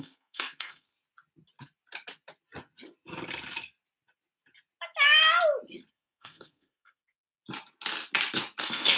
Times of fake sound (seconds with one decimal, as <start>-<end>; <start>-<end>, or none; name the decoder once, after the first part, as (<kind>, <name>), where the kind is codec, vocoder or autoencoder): 0.0-0.9 (codec, SNAC); 5.9-7.4; 8.6-9.0